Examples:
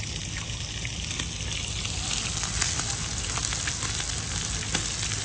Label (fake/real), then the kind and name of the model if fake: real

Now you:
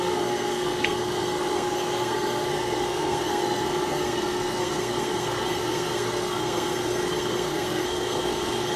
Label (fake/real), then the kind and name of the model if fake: fake, codec, SNAC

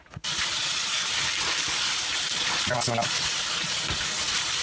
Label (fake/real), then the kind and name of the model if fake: real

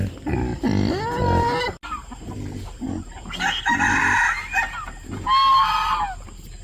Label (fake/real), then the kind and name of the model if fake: real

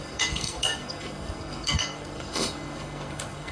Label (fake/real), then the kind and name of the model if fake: fake, codec, SNAC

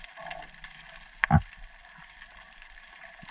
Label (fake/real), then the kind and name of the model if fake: real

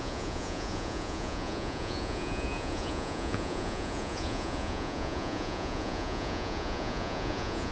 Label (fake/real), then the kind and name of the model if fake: fake, vocoder, Vocos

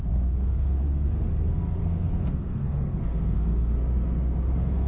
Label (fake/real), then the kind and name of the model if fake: fake, codec, SNAC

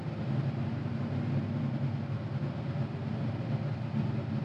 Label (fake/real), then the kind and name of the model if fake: real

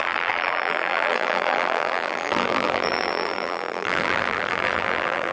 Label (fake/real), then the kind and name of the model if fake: fake, vocoder, BigVGAN v2